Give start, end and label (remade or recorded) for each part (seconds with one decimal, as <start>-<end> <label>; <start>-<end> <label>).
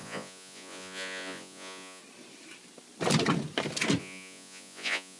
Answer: 0.0-2.0 remade; 2.0-4.0 recorded; 4.0-5.2 remade